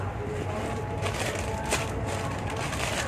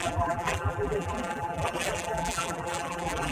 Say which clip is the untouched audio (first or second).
first